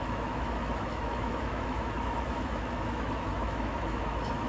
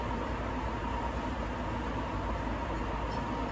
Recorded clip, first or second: second